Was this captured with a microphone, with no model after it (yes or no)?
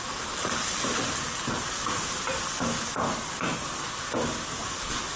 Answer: yes